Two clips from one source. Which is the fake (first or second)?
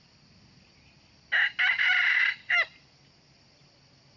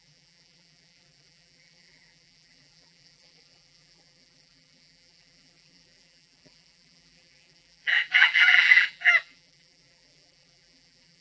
second